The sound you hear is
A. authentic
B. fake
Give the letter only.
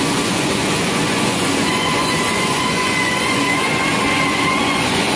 B